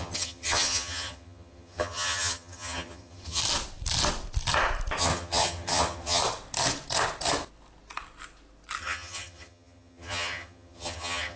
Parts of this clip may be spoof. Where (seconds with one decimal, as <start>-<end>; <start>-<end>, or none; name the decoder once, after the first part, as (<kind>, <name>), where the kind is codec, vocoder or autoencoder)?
0.0-3.4 (vocoder, HiFi-GAN); 5.0-6.2; 8.8-11.4